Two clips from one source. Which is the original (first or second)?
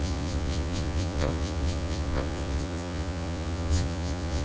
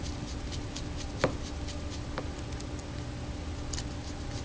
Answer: second